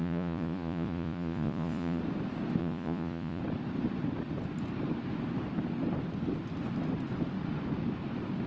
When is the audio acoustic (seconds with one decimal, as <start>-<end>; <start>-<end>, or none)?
2.0-2.6; 3.4-8.5